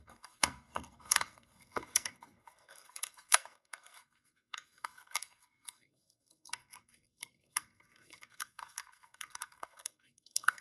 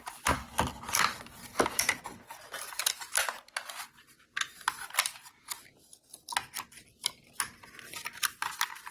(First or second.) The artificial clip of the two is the first